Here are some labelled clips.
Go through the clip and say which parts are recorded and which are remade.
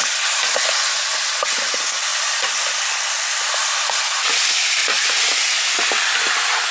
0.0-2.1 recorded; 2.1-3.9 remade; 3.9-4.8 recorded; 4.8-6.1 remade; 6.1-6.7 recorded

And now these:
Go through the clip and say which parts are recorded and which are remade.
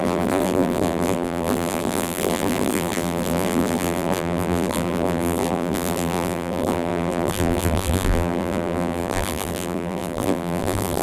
0.0-11.0 remade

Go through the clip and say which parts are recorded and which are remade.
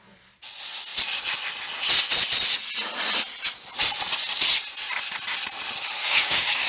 0.0-6.0 recorded; 6.0-6.7 remade